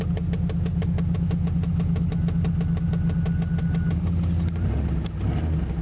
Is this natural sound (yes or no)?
yes